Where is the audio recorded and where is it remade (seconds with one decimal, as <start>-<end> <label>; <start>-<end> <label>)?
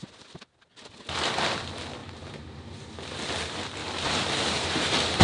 0.0-2.0 recorded; 2.0-2.7 remade; 2.7-3.8 recorded; 3.8-5.2 remade